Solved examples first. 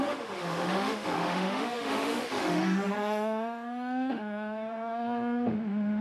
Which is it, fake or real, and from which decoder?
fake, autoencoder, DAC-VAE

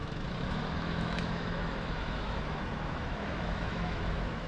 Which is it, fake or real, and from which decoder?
fake, autoencoder, DAC-VAE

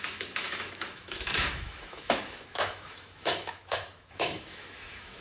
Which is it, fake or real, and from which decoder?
fake, autoencoder, DAC-VAE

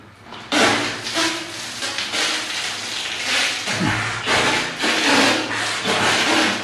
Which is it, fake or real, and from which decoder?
real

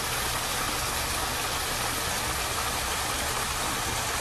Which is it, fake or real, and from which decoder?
real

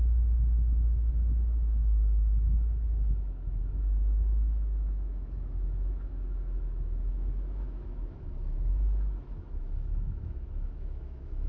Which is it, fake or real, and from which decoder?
fake, autoencoder, DAC-VAE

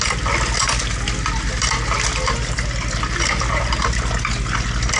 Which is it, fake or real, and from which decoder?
real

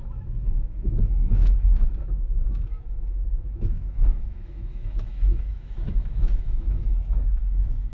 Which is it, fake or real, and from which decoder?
fake, autoencoder, DAC-VAE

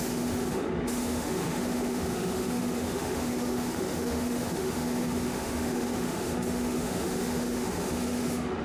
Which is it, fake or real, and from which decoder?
fake, autoencoder, DAC-VAE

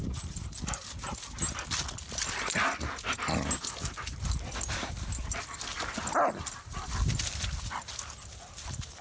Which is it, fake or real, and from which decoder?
real